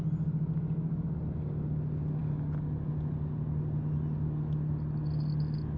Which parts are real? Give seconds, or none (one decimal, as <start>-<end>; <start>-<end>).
0.0-5.8